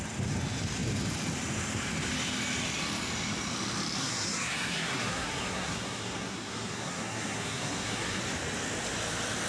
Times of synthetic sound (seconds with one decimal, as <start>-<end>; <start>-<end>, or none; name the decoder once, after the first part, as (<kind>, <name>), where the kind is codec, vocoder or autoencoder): 4.0-8.2 (codec, SNAC)